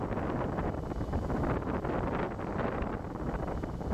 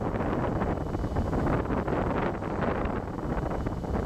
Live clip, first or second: second